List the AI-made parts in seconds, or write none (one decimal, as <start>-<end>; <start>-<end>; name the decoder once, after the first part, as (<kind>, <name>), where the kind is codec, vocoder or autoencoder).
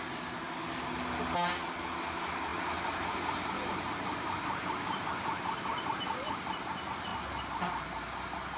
2.5-5.1 (vocoder, BigVGAN v2); 5.7-6.4